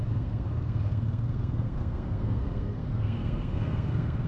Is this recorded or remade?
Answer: remade